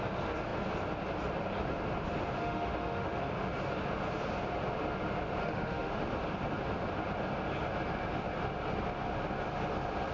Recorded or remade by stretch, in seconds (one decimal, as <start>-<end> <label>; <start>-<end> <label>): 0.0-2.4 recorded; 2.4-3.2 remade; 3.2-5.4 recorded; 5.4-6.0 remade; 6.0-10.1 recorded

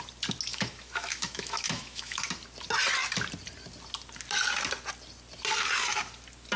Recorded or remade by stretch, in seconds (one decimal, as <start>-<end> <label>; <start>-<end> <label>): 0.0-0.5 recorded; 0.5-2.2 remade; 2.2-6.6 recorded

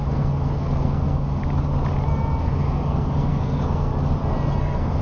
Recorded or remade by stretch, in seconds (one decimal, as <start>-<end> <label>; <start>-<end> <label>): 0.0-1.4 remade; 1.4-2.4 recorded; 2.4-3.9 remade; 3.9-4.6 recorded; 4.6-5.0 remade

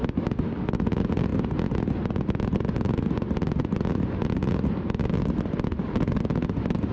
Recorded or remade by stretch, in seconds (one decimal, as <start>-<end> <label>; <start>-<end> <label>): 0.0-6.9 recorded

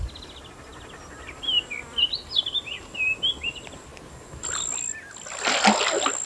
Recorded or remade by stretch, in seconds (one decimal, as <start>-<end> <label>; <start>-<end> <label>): 0.0-6.3 recorded

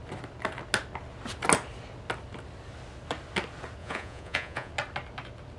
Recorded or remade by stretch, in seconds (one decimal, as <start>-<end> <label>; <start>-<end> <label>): 0.0-3.8 recorded; 3.8-4.7 remade; 4.7-5.6 recorded

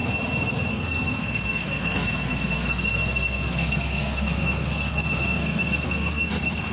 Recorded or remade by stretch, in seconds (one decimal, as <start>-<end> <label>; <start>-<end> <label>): 0.0-0.7 recorded; 0.7-6.7 remade

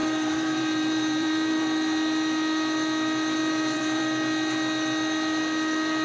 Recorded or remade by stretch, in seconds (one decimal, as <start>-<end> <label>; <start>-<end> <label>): 0.0-1.6 remade; 1.6-3.4 recorded; 3.4-4.0 remade; 4.0-6.0 recorded